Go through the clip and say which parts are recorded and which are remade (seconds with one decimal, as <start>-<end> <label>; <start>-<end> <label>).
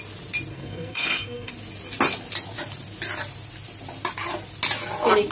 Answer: 0.0-0.5 recorded; 0.5-1.5 remade; 1.5-5.3 recorded